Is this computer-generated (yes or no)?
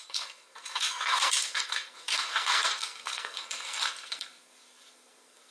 yes